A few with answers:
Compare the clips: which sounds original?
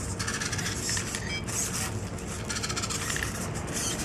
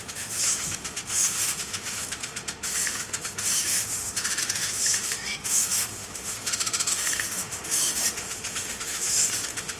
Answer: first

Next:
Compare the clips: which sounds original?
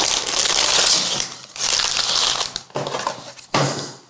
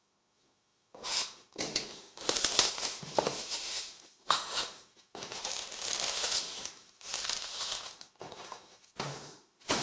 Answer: first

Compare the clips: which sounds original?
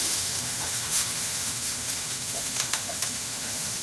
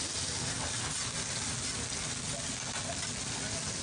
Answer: second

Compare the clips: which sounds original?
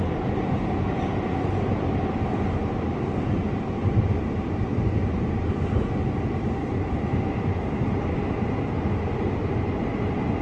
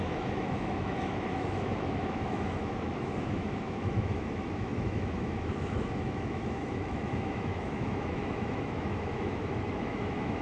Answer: first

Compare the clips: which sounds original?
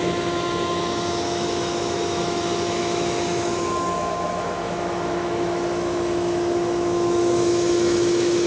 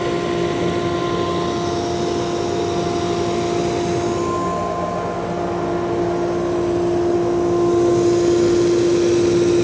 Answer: second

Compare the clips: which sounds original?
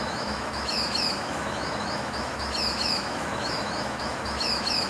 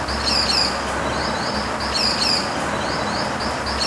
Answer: second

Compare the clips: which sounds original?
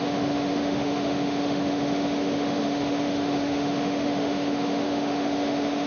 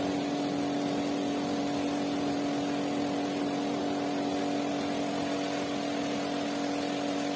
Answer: second